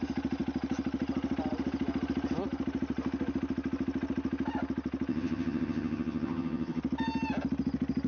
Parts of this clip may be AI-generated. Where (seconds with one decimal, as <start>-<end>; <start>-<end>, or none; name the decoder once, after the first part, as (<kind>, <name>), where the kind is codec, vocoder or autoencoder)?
5.1-6.8 (vocoder, HiFi-GAN)